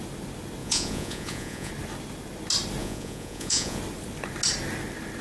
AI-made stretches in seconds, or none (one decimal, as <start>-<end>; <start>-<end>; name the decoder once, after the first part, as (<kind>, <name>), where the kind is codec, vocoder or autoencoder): 0.6-1.7 (vocoder, Vocos); 2.8-3.8